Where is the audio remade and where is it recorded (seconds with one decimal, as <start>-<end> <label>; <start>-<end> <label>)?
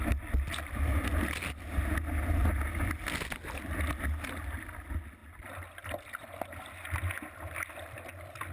0.0-8.5 recorded